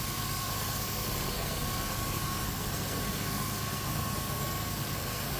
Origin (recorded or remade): remade